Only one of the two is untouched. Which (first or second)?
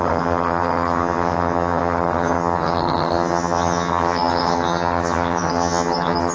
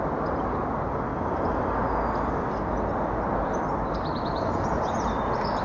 second